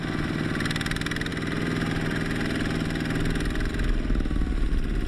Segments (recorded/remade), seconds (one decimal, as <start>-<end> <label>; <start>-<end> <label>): 0.0-5.1 recorded